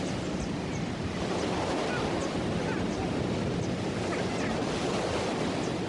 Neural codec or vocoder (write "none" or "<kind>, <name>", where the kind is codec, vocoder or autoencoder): none